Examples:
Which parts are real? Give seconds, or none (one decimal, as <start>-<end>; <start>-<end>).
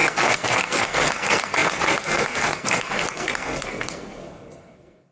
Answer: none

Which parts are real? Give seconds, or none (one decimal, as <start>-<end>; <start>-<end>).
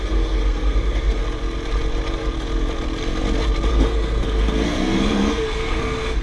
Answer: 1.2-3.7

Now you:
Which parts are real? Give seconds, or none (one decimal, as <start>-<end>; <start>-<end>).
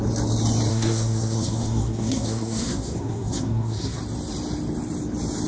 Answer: 0.0-0.7; 4.0-5.5